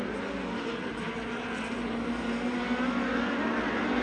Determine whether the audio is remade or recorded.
recorded